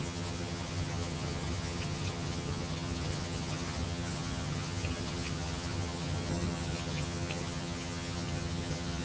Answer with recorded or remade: remade